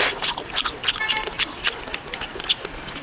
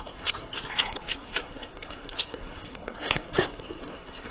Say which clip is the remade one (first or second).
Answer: second